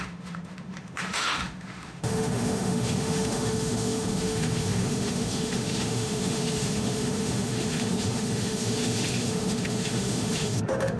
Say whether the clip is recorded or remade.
remade